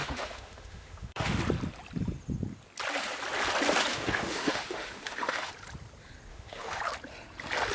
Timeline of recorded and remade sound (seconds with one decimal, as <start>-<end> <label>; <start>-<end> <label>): 0.0-1.4 remade; 1.4-3.9 recorded; 3.9-5.5 remade; 5.5-6.3 recorded; 6.3-6.8 remade; 6.8-7.7 recorded